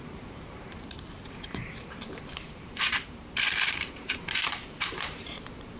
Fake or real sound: fake